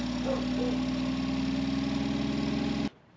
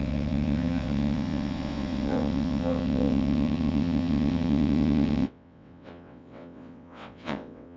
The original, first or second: first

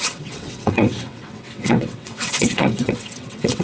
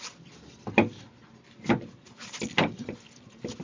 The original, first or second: second